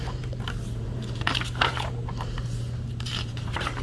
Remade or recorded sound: remade